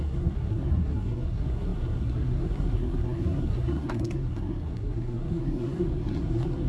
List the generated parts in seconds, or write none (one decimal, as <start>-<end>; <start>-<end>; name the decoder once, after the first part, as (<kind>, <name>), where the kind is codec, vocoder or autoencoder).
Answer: 0.0-6.7 (codec, SNAC)